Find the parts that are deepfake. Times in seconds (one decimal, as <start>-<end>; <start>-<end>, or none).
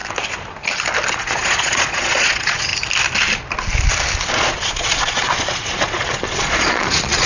1.1-2.7; 4.3-7.3